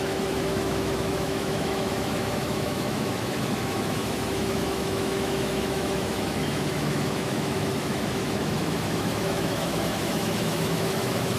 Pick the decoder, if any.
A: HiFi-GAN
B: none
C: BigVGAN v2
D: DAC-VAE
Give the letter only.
D